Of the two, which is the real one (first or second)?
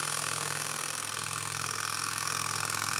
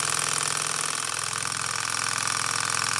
second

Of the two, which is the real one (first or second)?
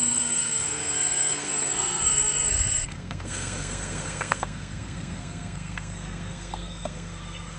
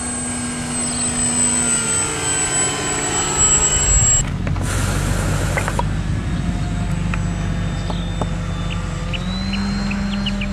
second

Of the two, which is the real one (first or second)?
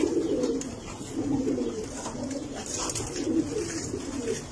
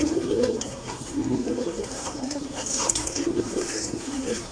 first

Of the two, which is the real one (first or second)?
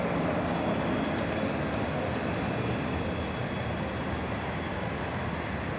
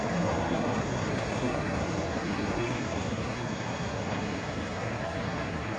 first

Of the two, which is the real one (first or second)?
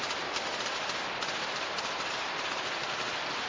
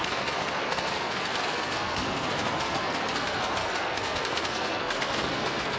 first